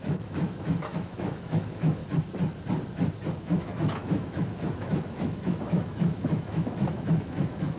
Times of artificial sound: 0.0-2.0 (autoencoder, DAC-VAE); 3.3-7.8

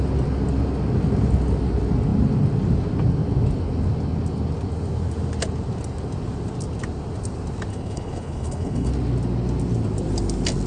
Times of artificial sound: 7.7-8.9 (codec, HILCodec)

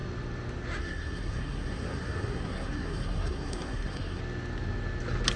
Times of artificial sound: 0.8-4.2 (codec, SNAC)

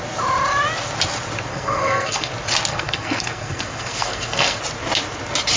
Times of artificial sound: 1.5-2.3 (codec, SNAC); 2.7-4.6

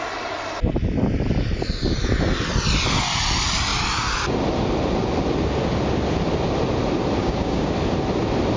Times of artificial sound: 7.2-7.7 (codec, DAC)

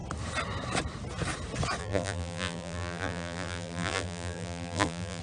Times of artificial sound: 1.8-5.2 (vocoder, BigVGAN v2)

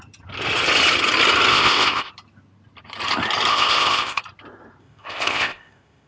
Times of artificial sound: 1.5-2.1 (codec, ZipCodec); 3.5-4.2; 4.8-6.1